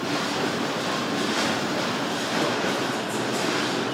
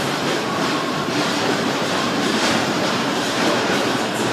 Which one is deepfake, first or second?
second